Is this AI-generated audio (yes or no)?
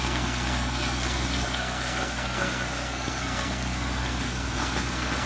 yes